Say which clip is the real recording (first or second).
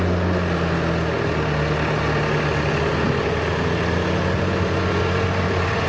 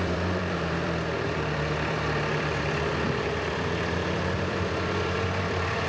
first